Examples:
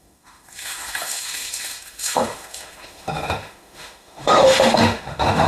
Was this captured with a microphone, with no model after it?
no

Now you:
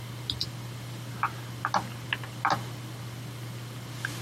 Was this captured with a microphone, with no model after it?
yes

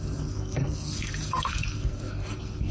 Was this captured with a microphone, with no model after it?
no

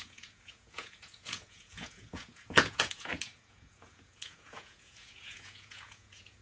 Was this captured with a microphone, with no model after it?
no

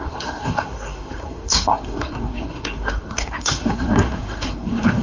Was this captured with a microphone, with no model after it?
no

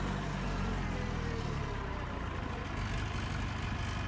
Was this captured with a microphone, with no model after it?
yes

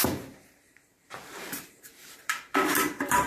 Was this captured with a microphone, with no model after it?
no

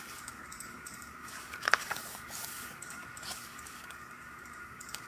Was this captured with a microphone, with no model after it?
no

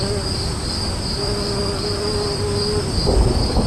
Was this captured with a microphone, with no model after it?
yes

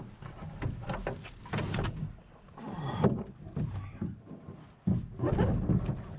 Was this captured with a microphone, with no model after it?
yes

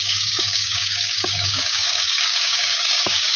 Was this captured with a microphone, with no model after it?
no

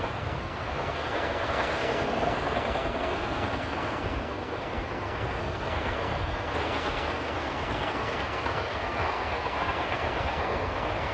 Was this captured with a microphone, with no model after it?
no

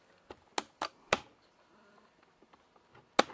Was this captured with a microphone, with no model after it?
yes